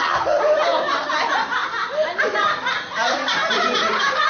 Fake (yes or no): no